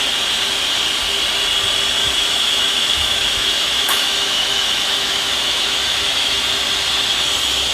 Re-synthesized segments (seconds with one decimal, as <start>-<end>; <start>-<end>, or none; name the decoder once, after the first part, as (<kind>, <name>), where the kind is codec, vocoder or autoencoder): 2.0-6.4 (autoencoder, DAC-VAE)